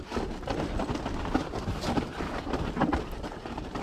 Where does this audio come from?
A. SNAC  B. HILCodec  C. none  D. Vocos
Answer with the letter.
C